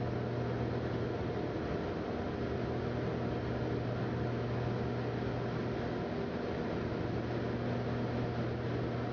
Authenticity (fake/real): real